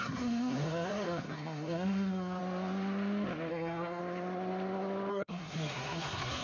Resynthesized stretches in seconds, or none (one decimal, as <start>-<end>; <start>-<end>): 0.0-2.4; 3.5-4.0; 5.1-6.4